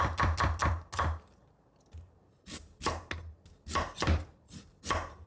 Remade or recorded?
recorded